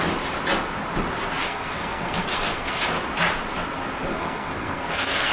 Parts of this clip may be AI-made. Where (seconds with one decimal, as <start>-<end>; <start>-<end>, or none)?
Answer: 1.4-2.8; 4.1-5.3

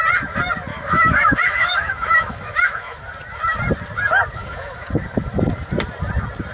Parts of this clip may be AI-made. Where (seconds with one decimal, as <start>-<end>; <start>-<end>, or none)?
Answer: 0.7-3.0; 4.4-4.9

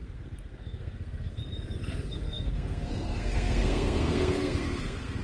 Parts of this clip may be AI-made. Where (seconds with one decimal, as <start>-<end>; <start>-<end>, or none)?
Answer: 0.0-1.4; 1.8-5.2

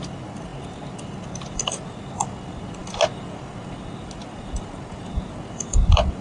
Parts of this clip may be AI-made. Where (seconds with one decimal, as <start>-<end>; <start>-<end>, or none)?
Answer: none